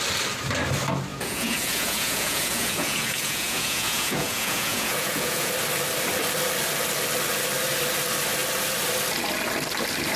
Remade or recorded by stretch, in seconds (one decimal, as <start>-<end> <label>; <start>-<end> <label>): 0.0-1.1 recorded; 1.1-5.5 remade; 5.5-10.2 recorded